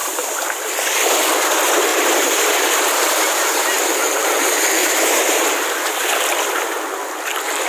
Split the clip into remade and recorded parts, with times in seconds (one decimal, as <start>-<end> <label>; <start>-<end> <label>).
0.0-1.9 recorded; 1.9-3.9 remade; 3.9-4.8 recorded; 4.8-5.5 remade; 5.5-7.7 recorded